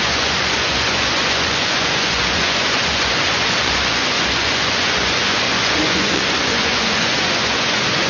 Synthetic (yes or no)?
yes